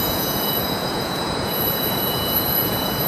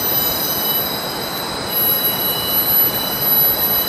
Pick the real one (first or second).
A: second